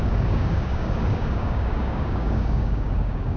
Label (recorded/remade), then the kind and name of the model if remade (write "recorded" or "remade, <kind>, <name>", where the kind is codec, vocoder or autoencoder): remade, codec, DAC